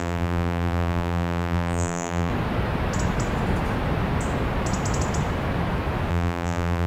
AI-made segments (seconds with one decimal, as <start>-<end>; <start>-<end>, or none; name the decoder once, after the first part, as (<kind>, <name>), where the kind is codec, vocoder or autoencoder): 0.0-2.3 (vocoder, BigVGAN v2); 6.1-6.9